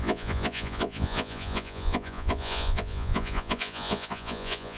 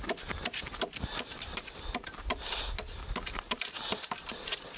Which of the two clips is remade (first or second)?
first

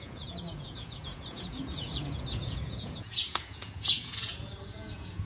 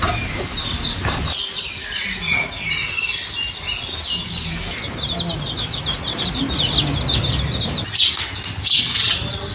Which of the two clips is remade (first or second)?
first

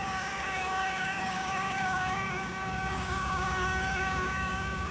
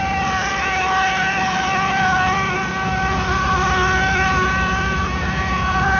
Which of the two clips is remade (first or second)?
first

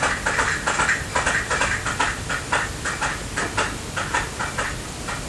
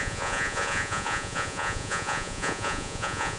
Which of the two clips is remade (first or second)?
second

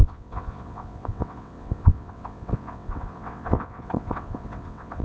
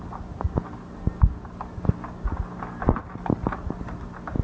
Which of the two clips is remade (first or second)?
first